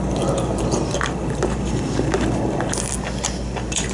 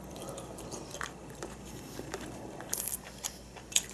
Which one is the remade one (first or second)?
second